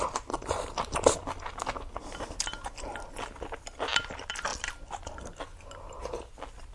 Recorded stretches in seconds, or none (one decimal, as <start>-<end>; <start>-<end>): 0.0-6.7